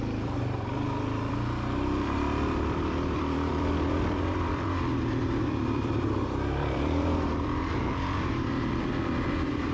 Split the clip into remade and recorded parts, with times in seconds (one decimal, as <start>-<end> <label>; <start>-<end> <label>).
0.0-9.7 remade